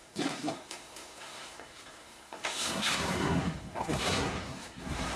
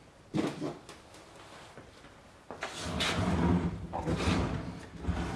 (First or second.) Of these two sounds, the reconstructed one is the first